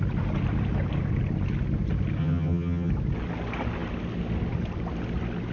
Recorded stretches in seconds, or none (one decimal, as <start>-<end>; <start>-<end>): 0.0-2.2; 2.9-5.5